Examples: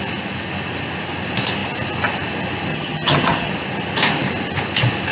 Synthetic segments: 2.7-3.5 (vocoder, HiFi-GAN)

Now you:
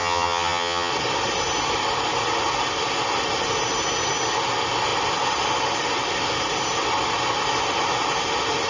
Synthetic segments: 0.0-0.9 (vocoder, HiFi-GAN)

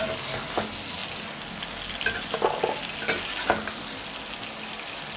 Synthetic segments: none

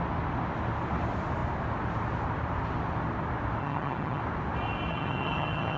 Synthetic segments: 3.6-4.2 (vocoder, HiFi-GAN); 4.9-5.8

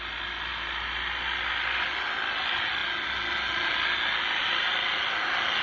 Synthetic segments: none

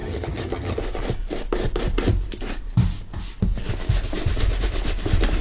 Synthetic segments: 0.0-0.8 (vocoder, HiFi-GAN)